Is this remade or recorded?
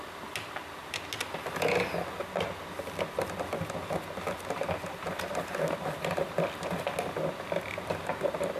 recorded